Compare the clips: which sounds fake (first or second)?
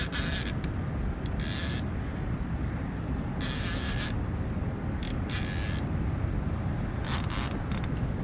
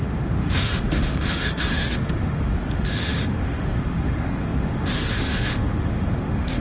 second